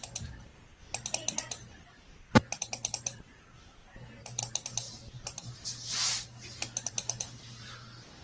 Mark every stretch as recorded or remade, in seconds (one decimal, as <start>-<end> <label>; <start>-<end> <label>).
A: 0.0-3.8 remade; 3.8-4.4 recorded; 4.4-8.2 remade

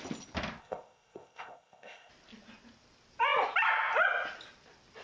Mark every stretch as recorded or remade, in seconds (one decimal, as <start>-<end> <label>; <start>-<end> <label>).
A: 0.0-0.6 recorded; 0.6-2.1 remade; 2.1-5.0 recorded

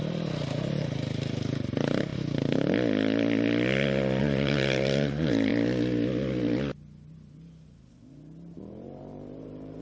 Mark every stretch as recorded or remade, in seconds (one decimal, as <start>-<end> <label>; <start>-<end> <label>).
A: 0.0-2.1 remade; 2.1-4.2 recorded; 4.2-5.5 remade; 5.5-8.6 recorded; 8.6-9.8 remade

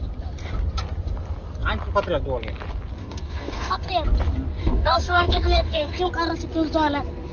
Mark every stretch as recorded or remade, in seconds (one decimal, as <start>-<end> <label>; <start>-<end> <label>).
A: 0.0-3.0 recorded; 3.0-3.9 remade; 3.9-4.6 recorded; 4.6-6.0 remade; 6.0-7.3 recorded